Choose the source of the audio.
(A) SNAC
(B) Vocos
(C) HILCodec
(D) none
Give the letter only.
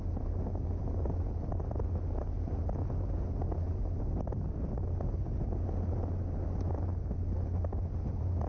D